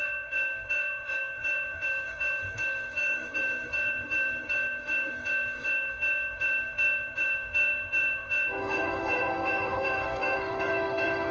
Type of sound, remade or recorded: remade